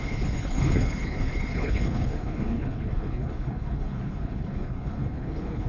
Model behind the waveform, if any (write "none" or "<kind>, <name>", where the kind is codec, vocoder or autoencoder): codec, HILCodec